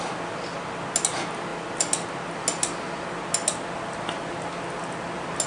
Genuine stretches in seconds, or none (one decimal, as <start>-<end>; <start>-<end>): 0.0-5.5